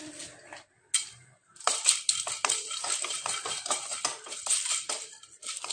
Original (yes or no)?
yes